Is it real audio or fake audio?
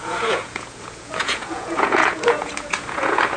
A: fake